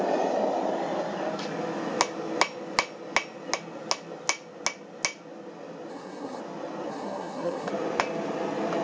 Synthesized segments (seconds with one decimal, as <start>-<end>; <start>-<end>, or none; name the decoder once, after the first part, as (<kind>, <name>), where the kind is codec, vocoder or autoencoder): 5.9-6.4 (codec, SNAC); 6.9-7.7